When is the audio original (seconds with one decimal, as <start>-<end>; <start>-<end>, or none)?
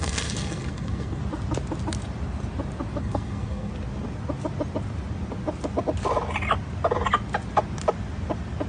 1.2-3.0; 3.7-8.7